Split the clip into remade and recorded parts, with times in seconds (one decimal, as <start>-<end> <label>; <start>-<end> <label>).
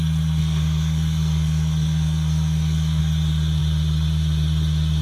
0.0-0.4 recorded; 0.4-3.0 remade; 3.0-5.0 recorded